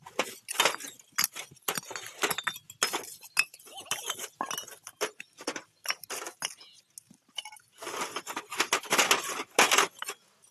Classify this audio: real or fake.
real